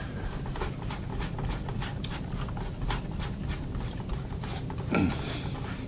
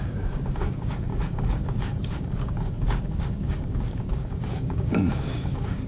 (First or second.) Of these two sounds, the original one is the first